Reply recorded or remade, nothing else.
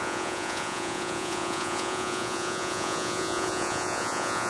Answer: remade